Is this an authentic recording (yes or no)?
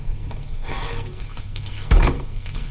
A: no